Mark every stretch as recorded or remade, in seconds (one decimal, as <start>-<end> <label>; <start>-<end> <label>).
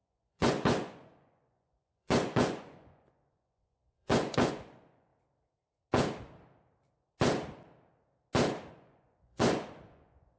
0.0-5.1 remade; 5.1-8.7 recorded; 8.7-10.4 remade